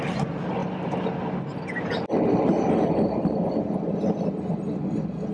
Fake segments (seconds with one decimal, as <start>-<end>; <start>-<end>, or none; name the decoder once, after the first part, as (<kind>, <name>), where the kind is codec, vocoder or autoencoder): none